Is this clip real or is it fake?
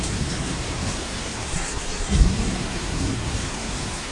fake